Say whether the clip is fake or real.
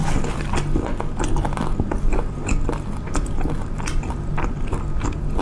real